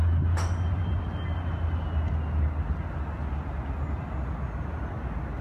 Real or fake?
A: real